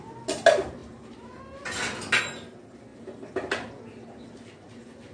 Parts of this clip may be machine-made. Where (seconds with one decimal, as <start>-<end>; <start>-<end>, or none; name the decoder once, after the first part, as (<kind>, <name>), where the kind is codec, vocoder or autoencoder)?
none